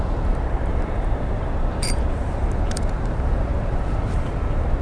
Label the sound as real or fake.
fake